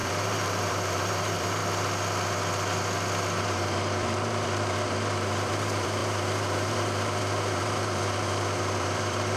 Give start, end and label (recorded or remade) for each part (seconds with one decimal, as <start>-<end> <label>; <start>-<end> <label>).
0.0-1.6 remade; 1.6-3.4 recorded; 3.4-9.4 remade